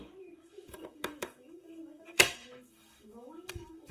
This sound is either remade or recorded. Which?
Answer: remade